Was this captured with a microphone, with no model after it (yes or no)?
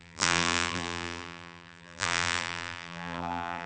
no